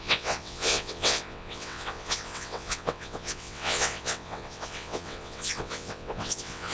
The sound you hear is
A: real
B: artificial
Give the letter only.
B